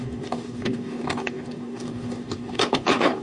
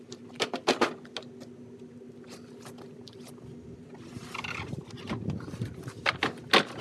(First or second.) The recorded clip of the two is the second